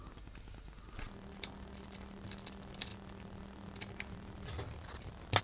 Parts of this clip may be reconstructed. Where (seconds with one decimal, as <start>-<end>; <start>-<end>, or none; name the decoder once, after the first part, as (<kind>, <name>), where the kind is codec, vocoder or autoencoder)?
none